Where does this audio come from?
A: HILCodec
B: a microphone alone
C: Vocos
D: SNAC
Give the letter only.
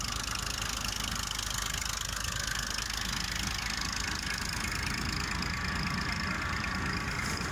B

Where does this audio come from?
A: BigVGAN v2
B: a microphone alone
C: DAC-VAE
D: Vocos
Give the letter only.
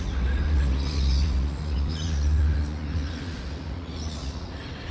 D